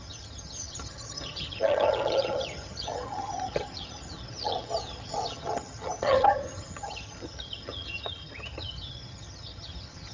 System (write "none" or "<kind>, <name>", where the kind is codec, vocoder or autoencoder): vocoder, HiFi-GAN